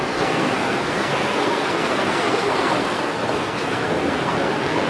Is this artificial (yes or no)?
yes